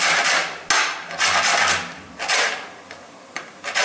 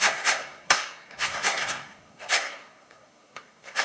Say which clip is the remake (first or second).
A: second